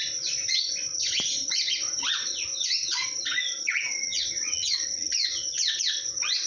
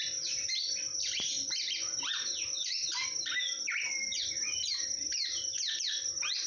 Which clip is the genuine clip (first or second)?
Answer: second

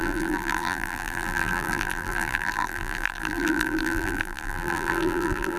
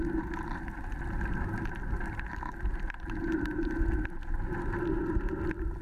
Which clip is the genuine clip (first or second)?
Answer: second